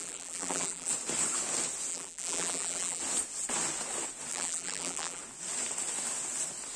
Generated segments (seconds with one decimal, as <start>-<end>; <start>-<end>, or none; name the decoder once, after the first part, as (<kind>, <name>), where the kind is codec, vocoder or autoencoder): 0.0-0.9 (vocoder, BigVGAN v2); 1.9-3.0; 4.3-5.2